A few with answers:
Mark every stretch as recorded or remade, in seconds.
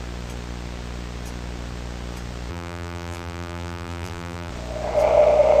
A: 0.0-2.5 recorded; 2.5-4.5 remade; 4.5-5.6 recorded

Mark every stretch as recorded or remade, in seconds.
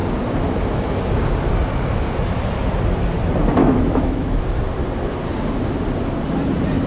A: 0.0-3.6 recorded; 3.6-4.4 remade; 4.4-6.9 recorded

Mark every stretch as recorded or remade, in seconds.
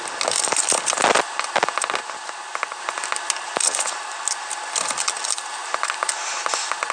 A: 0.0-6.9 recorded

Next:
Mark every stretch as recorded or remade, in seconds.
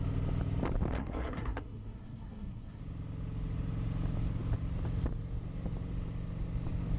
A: 0.0-1.0 recorded; 1.0-2.8 remade; 2.8-7.0 recorded